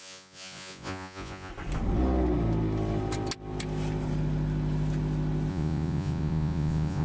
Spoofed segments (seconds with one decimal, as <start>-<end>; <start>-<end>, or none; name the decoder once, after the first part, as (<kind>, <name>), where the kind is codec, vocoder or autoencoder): 0.0-1.5 (vocoder, Vocos); 5.5-7.0